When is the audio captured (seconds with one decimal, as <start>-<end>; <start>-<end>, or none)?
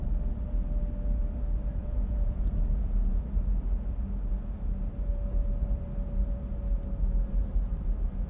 0.0-1.8; 3.2-8.3